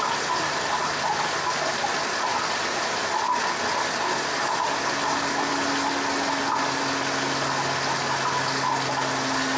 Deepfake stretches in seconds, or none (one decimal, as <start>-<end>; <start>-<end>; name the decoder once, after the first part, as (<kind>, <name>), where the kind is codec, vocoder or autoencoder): none